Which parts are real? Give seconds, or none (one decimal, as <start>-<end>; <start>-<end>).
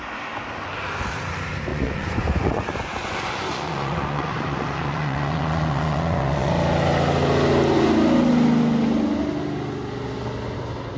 0.0-1.7; 6.5-11.0